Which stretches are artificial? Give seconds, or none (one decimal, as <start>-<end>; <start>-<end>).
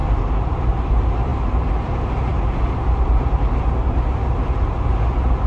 0.0-0.6; 2.3-4.9